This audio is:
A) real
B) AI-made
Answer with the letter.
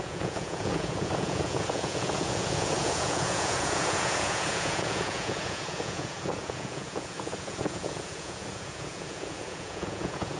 B